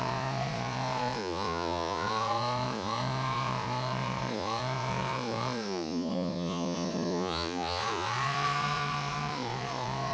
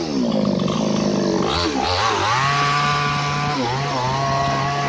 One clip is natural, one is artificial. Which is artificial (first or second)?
first